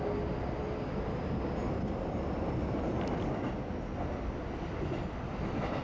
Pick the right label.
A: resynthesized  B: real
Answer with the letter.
B